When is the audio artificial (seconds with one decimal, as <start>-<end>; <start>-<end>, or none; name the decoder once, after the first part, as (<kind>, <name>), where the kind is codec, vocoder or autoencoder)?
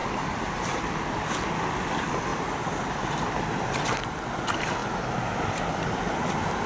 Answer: 0.0-1.0 (vocoder, BigVGAN v2)